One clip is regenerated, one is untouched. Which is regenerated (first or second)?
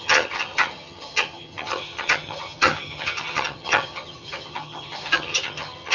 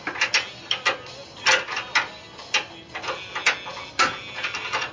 first